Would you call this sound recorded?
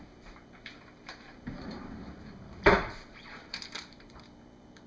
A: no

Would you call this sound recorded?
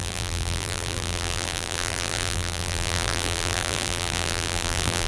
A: no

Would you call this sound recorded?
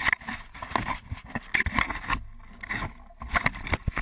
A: yes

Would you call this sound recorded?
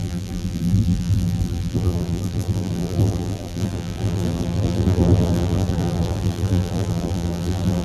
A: no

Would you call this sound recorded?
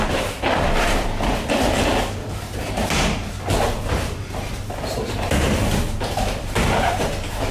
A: no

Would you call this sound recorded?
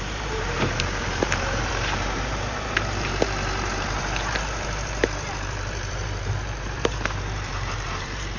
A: no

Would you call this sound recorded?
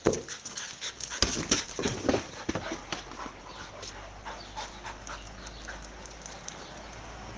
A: yes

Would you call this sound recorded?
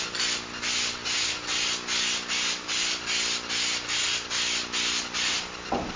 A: yes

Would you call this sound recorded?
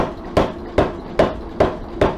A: yes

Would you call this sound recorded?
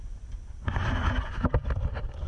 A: yes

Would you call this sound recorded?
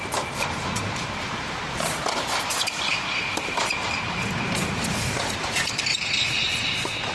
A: no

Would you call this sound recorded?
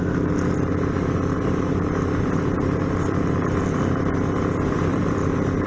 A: yes